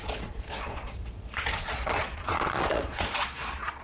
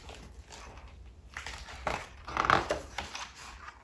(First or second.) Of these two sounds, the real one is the second